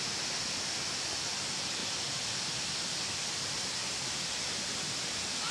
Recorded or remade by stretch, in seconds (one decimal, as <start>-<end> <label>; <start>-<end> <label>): 0.0-5.5 recorded